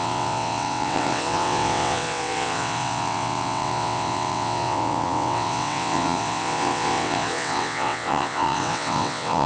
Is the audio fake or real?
fake